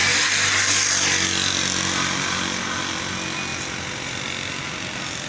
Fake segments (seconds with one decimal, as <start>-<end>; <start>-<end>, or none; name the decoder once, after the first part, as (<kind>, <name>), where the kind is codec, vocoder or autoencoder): none